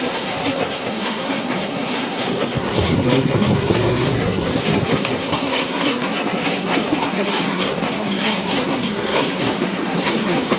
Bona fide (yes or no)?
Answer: no